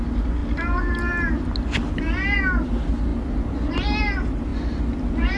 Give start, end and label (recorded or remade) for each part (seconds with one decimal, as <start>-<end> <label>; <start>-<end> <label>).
0.0-5.4 recorded